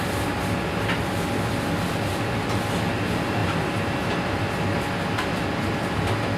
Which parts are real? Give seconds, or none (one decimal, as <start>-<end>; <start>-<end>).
0.0-3.4; 4.4-6.4